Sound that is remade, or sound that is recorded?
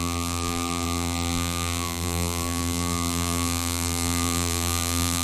remade